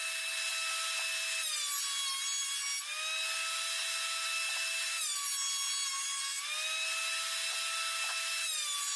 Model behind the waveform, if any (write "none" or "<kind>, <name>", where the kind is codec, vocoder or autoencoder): none